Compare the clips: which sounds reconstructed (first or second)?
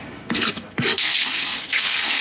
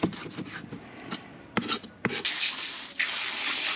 first